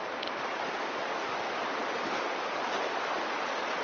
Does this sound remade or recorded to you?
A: recorded